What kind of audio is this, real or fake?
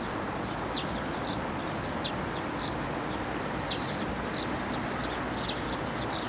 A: real